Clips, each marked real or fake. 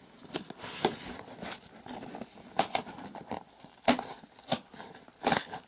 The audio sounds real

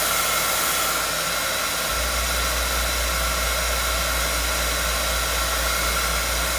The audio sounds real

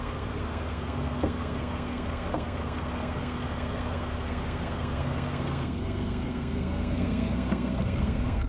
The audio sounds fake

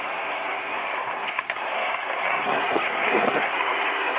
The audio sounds fake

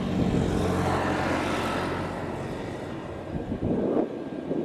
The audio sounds real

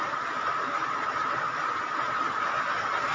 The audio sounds real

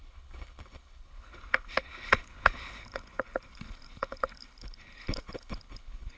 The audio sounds fake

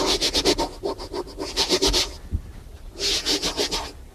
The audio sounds real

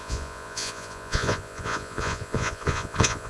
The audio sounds fake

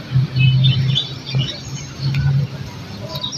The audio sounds real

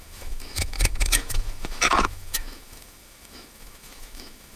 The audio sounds fake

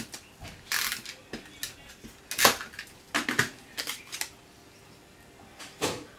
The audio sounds real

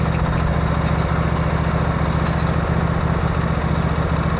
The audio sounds real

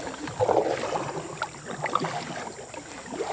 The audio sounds fake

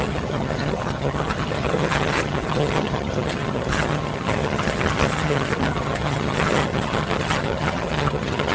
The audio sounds fake